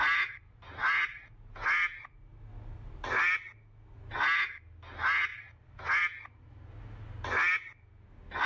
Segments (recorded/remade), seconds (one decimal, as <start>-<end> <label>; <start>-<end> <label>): 0.0-8.5 recorded